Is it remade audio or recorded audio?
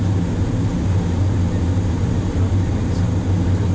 recorded